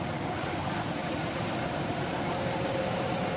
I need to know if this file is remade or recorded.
remade